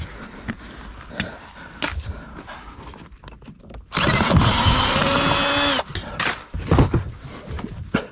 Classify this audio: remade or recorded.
recorded